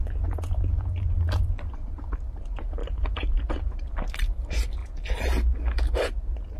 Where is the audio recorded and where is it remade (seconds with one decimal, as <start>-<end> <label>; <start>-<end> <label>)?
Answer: 0.0-4.8 remade; 4.8-6.6 recorded